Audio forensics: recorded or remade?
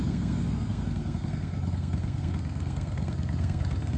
remade